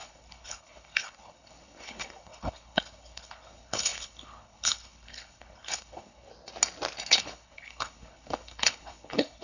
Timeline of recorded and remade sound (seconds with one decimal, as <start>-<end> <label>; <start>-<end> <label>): 0.0-6.3 remade; 6.3-7.1 recorded; 7.1-9.4 remade